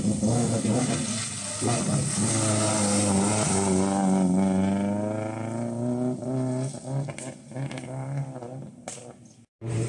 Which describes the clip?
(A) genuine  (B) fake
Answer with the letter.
A